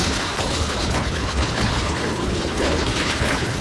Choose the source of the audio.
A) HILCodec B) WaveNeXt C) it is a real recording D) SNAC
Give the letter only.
A